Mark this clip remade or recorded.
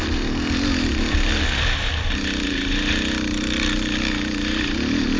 recorded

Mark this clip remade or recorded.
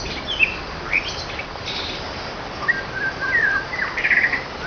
recorded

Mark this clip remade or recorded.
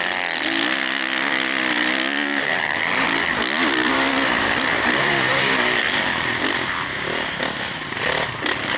remade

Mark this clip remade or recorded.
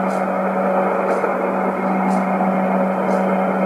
recorded